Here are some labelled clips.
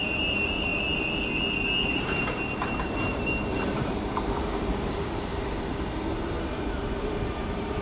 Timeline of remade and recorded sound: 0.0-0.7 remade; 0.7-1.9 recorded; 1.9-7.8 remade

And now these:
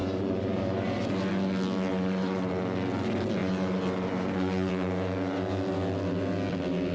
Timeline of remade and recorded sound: 0.0-1.3 remade; 1.3-1.9 recorded; 1.9-2.5 remade; 2.5-3.4 recorded; 3.4-4.7 remade; 4.7-6.9 recorded

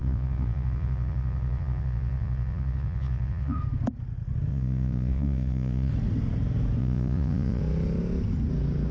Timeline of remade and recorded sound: 0.0-3.6 remade; 3.6-4.5 recorded; 4.5-5.9 remade; 5.9-6.8 recorded; 6.8-7.6 remade; 7.6-8.9 recorded

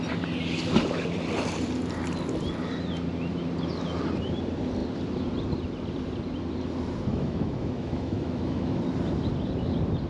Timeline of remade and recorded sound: 0.0-7.1 recorded; 7.1-8.8 remade; 8.8-10.1 recorded

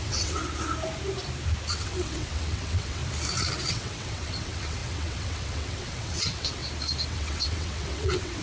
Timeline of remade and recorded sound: 0.0-0.4 remade; 0.4-1.7 recorded; 1.7-3.0 remade; 3.0-3.7 recorded; 3.7-6.6 remade; 6.6-7.1 recorded; 7.1-8.4 remade

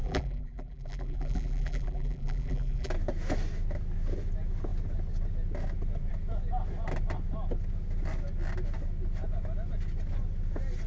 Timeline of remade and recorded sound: 0.0-2.9 remade; 2.9-10.9 recorded